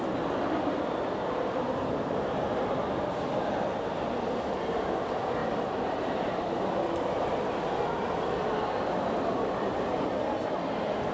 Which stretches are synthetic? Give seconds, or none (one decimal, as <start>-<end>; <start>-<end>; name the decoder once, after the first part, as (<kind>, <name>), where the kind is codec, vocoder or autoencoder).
1.5-2.0 (vocoder, BigVGAN v2); 5.4-6.7